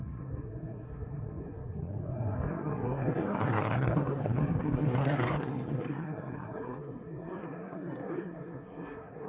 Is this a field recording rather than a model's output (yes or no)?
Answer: no